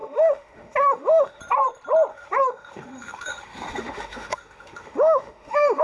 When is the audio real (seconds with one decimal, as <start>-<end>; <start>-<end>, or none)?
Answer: 1.4-2.1